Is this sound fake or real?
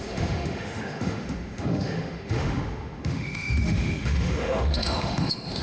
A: fake